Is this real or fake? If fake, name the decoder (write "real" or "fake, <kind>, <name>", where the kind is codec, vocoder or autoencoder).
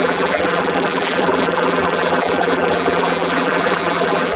fake, vocoder, BigVGAN v2